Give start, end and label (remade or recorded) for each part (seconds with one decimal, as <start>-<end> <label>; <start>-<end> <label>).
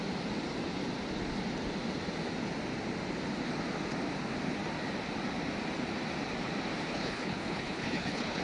0.0-6.9 recorded; 6.9-8.4 remade